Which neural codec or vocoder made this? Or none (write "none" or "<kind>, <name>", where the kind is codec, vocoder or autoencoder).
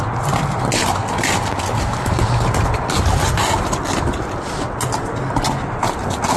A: none